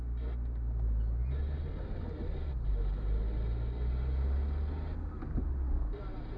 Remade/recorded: recorded